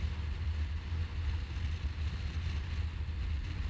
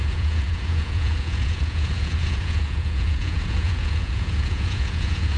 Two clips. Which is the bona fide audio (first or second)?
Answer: first